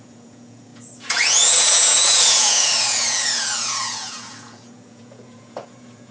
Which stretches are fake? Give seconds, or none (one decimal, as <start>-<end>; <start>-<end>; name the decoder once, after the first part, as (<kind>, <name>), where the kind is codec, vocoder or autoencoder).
0.0-6.1 (vocoder, Vocos)